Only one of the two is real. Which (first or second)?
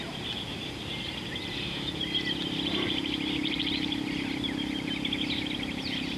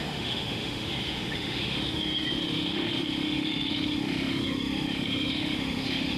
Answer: first